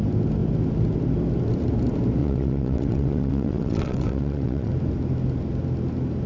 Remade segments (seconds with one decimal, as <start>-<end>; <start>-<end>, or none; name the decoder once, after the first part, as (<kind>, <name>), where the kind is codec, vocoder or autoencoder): 2.2-4.7 (vocoder, WaveNeXt)